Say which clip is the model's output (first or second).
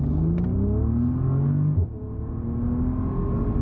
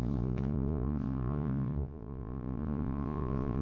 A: second